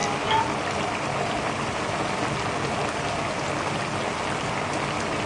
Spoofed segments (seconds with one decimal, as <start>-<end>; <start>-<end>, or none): none